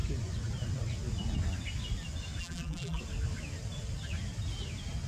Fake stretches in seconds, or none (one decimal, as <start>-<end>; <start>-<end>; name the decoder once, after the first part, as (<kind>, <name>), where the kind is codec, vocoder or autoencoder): 2.4-3.0 (vocoder, BigVGAN v2)